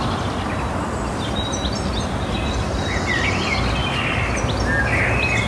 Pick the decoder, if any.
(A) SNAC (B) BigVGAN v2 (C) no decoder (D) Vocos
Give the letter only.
C